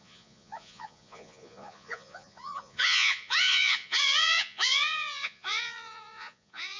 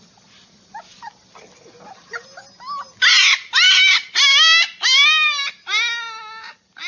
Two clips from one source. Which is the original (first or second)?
second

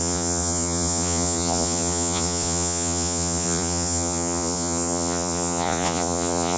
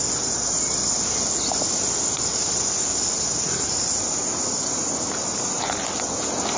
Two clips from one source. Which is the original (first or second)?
second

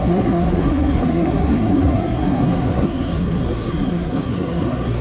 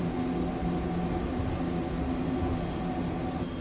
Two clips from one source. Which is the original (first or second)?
second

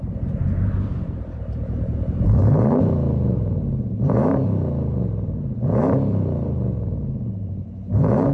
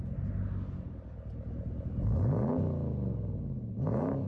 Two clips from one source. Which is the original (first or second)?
second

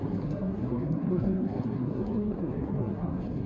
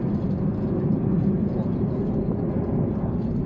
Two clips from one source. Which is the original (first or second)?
second